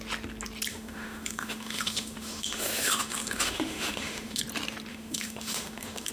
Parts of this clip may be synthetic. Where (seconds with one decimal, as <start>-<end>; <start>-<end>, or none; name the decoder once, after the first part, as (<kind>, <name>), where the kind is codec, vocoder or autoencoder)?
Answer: 0.7-4.4 (autoencoder, DAC-VAE); 4.9-6.1